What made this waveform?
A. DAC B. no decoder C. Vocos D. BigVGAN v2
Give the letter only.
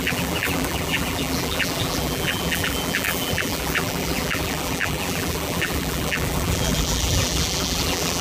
D